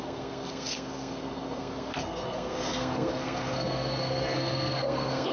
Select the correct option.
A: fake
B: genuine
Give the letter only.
A